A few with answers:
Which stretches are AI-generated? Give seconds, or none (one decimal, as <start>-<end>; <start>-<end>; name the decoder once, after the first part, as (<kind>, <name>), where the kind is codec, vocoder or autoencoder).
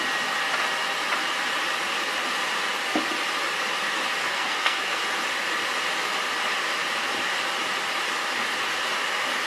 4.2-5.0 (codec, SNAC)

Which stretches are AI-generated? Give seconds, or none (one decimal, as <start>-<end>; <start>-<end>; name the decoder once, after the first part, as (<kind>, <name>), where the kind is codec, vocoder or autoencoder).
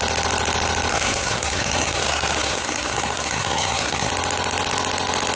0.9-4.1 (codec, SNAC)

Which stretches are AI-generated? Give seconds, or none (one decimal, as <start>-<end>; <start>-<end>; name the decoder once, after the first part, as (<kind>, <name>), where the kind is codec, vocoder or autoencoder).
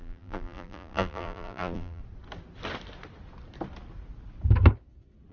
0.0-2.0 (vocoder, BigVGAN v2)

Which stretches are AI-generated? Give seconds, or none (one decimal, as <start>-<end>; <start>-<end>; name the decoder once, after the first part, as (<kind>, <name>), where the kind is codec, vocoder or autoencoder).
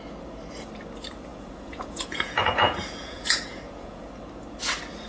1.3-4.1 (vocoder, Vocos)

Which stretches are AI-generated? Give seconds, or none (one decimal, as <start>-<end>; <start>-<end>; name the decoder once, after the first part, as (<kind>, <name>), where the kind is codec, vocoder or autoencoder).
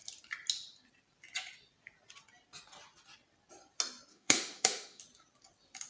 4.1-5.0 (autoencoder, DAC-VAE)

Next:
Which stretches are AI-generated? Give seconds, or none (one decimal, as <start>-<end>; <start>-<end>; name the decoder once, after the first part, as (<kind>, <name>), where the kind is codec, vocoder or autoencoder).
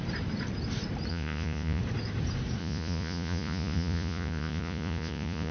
1.1-1.8 (vocoder, Vocos); 2.6-5.5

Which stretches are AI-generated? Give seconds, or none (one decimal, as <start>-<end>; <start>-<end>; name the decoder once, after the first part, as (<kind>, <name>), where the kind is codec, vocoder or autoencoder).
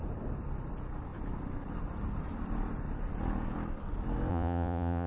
4.3-5.1 (vocoder, Vocos)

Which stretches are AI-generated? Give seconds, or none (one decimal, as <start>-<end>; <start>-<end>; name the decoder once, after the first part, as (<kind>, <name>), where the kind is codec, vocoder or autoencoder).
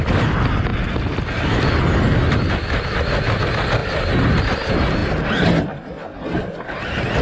none